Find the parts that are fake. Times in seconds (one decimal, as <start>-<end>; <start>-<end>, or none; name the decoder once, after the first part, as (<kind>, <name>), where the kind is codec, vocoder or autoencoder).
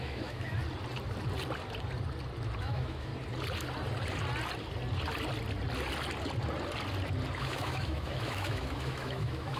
0.0-0.6 (autoencoder, DAC-VAE); 2.6-3.1; 7.4-9.6